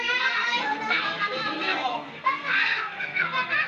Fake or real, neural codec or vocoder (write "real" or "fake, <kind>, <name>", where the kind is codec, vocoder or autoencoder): fake, codec, SNAC